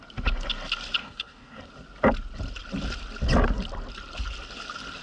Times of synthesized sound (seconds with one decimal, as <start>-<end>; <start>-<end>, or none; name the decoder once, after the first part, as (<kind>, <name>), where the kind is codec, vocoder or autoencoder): 1.0-1.6 (codec, DAC)